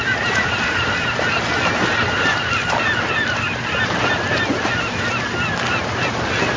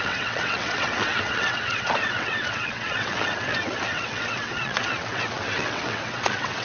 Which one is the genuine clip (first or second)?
first